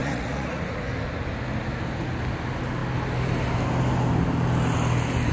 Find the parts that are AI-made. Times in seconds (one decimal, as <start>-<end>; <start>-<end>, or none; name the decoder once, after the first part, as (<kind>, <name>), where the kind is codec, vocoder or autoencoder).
0.0-0.6 (vocoder, Vocos)

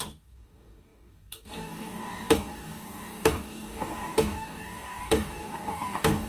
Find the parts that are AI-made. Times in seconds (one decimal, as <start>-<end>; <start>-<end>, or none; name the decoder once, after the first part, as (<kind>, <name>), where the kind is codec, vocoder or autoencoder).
0.0-6.3 (codec, DAC)